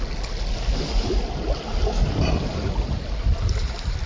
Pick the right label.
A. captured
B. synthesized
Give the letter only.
A